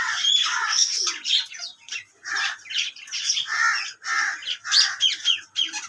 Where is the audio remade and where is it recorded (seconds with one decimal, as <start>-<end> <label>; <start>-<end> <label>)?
0.0-3.3 remade; 3.3-5.9 recorded